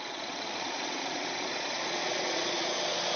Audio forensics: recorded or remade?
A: remade